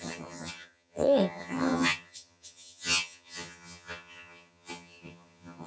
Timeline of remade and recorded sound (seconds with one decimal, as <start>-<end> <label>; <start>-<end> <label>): 0.0-5.7 remade